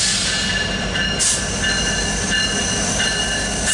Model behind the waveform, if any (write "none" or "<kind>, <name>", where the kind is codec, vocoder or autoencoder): none